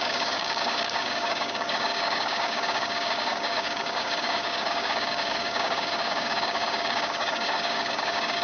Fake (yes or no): yes